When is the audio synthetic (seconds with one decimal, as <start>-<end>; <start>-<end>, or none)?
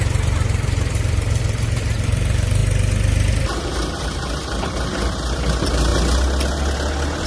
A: 0.0-2.6; 3.3-5.9